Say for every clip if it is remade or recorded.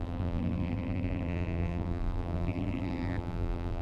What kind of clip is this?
remade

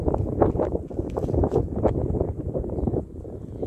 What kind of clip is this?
recorded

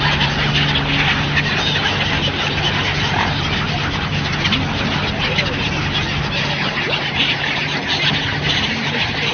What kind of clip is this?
recorded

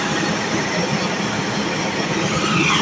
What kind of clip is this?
recorded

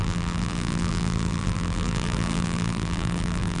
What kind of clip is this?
remade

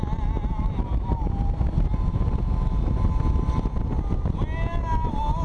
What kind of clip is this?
recorded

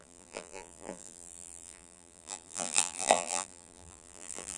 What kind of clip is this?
remade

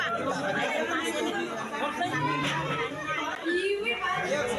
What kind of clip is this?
recorded